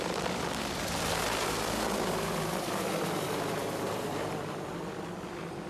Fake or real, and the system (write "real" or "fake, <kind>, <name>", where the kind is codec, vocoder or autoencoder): fake, vocoder, BigVGAN v2